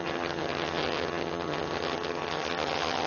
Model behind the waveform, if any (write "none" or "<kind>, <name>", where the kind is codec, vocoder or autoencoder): vocoder, HiFi-GAN